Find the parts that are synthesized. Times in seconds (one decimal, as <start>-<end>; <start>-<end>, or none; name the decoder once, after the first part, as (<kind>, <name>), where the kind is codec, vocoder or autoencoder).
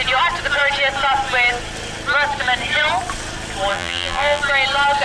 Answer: 3.7-4.4 (vocoder, BigVGAN v2)